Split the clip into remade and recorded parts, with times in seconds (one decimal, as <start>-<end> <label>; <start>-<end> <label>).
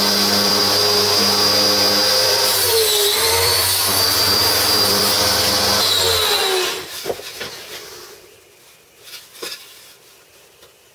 0.0-0.6 remade; 0.6-2.1 recorded; 2.1-5.1 remade; 5.1-9.5 recorded; 9.5-10.9 remade